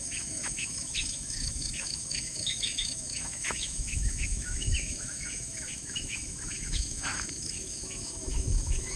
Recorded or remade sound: remade